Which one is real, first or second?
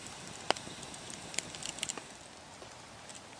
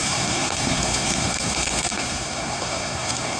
first